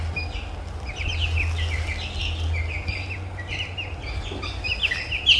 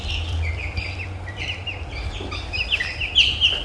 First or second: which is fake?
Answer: second